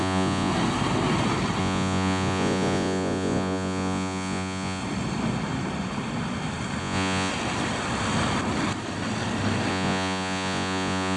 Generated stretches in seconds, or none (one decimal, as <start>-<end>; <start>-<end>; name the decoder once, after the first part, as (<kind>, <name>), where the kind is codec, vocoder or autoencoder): 0.0-0.5 (vocoder, Vocos); 1.6-4.8; 6.8-7.3; 9.7-11.2